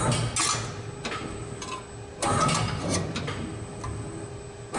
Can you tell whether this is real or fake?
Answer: real